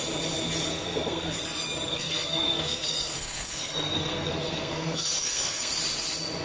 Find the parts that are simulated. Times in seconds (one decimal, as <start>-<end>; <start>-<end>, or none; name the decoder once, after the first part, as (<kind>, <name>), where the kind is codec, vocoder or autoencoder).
0.7-1.4 (codec, SNAC); 1.9-5.7